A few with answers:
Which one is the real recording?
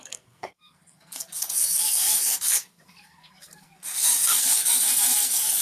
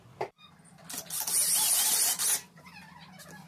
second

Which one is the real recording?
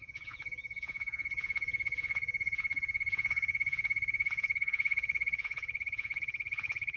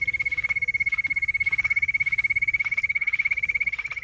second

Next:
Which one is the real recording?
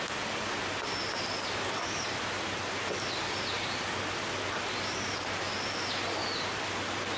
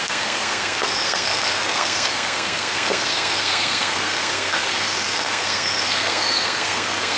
first